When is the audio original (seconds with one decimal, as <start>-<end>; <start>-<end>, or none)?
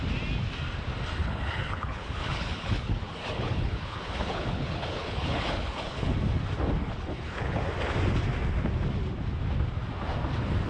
0.0-1.2; 6.1-6.8; 7.6-10.7